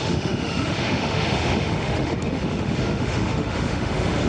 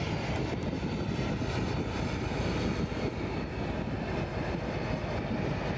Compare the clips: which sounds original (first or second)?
second